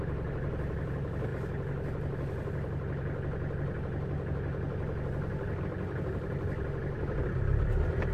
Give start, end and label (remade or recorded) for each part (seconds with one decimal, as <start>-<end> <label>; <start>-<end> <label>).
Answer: 0.0-8.1 recorded